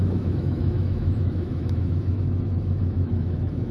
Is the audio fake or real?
fake